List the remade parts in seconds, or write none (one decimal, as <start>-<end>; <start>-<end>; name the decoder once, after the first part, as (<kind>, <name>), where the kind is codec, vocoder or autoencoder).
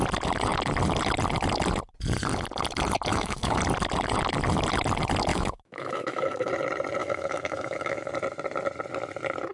3.1-3.6 (autoencoder, DAC-VAE); 5.3-6.5; 7.0-8.1